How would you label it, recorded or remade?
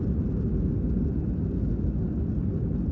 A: recorded